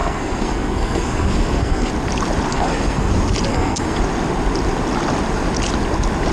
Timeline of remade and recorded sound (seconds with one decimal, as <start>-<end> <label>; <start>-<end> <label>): 0.0-1.9 remade; 1.9-2.5 recorded; 2.5-3.1 remade; 3.1-3.5 recorded; 3.5-4.0 remade; 4.0-6.3 recorded